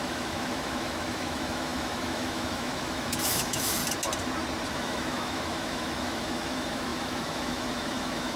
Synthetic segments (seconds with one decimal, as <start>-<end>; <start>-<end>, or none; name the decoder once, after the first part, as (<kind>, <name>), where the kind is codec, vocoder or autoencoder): 0.0-3.8 (autoencoder, DAC-VAE); 4.7-8.4